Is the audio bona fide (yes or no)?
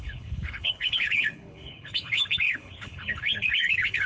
no